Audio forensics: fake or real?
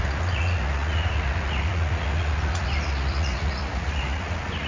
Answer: fake